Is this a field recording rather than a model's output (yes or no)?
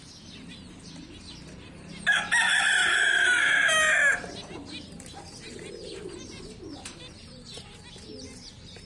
yes